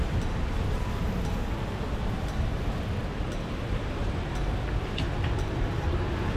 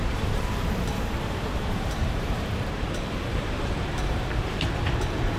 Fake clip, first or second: second